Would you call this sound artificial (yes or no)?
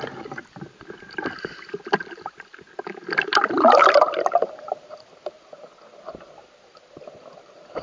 yes